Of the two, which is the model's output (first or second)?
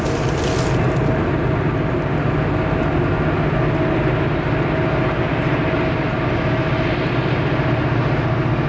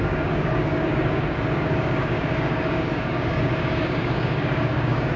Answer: second